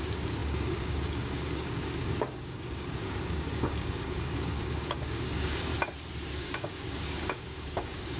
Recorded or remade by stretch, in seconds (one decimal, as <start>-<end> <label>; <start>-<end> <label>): 0.0-5.7 remade; 5.7-6.3 recorded; 6.3-8.2 remade